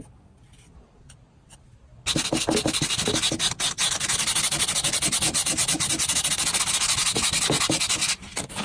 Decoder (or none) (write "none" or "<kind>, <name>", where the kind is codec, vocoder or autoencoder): none